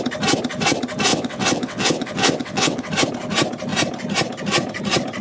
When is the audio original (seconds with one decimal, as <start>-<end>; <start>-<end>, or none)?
0.0-1.1; 2.9-5.2